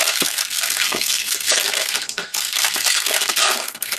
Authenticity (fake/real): fake